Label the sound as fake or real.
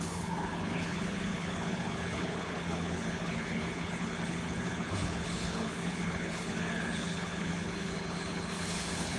fake